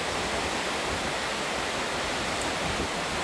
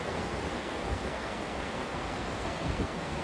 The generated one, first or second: second